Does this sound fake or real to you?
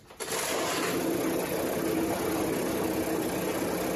real